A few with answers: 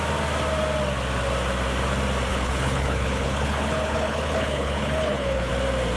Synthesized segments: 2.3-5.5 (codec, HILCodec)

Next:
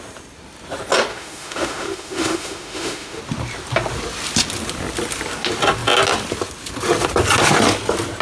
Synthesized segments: 1.1-3.2 (autoencoder, DAC-VAE)

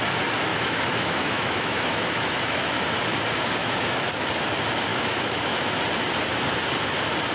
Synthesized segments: 0.5-2.8 (autoencoder, DAC-VAE); 3.6-4.1; 4.9-5.7

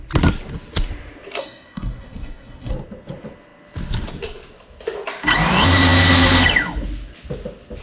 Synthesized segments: 1.4-2.7 (codec, SNAC)